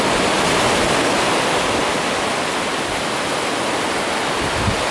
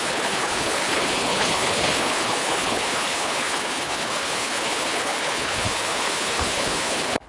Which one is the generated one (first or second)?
second